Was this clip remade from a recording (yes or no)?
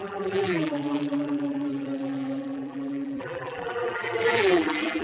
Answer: yes